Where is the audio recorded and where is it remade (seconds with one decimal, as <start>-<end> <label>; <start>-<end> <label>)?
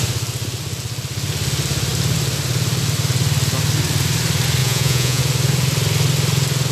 0.0-4.6 recorded; 4.6-5.2 remade; 5.2-6.7 recorded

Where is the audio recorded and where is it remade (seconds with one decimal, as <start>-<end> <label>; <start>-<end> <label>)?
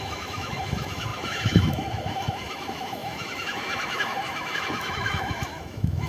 0.0-6.1 remade